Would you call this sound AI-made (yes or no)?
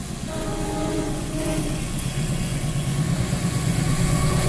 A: yes